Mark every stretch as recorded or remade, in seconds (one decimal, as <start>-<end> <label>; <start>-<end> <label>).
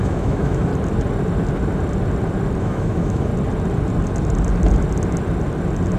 0.0-0.7 remade; 0.7-2.6 recorded; 2.6-3.3 remade; 3.3-6.0 recorded